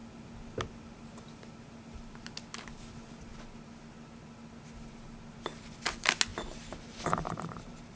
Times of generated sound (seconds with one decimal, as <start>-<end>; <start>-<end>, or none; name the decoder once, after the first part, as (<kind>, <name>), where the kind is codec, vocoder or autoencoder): 6.3-8.0 (vocoder, BigVGAN v2)